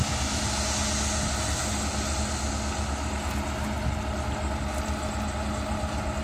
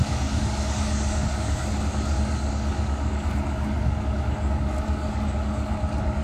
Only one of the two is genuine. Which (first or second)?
first